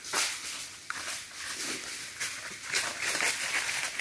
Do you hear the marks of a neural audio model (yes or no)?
no